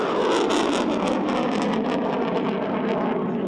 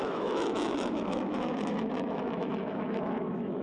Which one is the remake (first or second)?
second